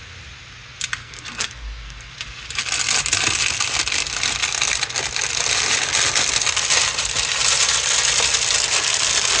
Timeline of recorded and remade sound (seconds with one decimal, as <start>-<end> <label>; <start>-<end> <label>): 0.0-1.0 recorded; 1.0-2.1 remade; 2.1-9.4 recorded